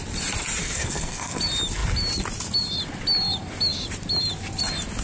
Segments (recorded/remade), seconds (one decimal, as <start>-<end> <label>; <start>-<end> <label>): 0.0-0.6 recorded; 0.6-1.4 remade; 1.4-5.0 recorded

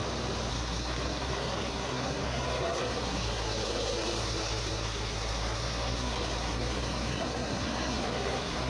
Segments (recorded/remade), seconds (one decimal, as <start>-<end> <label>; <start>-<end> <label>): 0.0-0.5 recorded; 0.5-8.7 remade

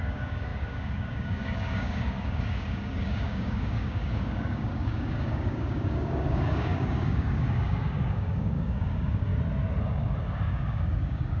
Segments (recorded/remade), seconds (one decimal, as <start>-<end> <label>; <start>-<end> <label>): 0.0-9.3 remade; 9.3-9.9 recorded; 9.9-11.4 remade